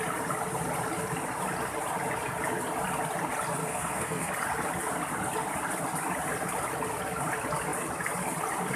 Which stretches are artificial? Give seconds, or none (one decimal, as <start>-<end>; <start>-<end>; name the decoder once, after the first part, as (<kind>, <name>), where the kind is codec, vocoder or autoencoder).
3.6-4.3 (codec, SNAC)